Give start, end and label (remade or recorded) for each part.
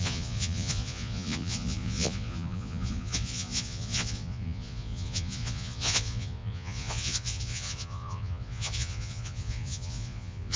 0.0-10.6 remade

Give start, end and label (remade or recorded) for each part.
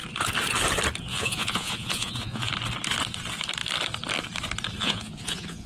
0.0-1.1 recorded; 1.1-2.5 remade; 2.5-4.8 recorded; 4.8-5.7 remade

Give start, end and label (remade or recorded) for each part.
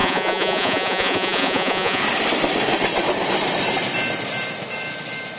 0.0-2.0 remade; 2.0-5.4 recorded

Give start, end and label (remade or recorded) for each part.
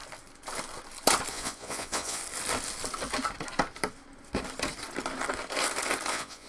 0.0-1.3 recorded; 1.3-2.2 remade; 2.2-6.1 recorded; 6.1-6.5 remade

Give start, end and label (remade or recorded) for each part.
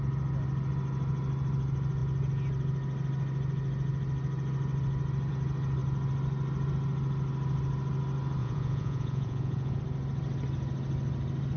0.0-8.4 recorded; 8.4-9.8 remade; 9.8-11.6 recorded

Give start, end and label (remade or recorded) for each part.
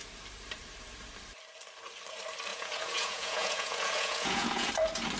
0.0-2.5 recorded; 2.5-4.7 remade; 4.7-5.2 recorded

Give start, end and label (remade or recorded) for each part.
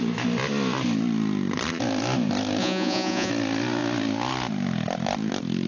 0.0-2.6 recorded; 2.6-3.3 remade; 3.3-5.7 recorded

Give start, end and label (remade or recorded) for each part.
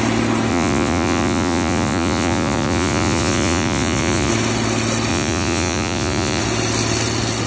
0.0-0.5 recorded; 0.5-4.3 remade; 4.3-5.1 recorded; 5.1-6.4 remade; 6.4-7.5 recorded